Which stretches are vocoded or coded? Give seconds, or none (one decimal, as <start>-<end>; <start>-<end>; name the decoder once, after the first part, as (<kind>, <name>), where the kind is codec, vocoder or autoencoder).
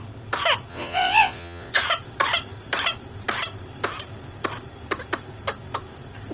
0.7-1.7 (vocoder, Vocos)